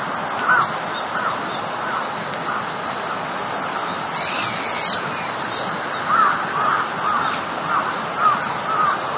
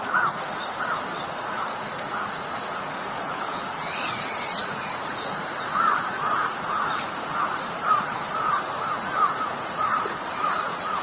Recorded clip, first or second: first